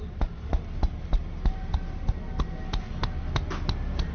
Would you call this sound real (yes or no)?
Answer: yes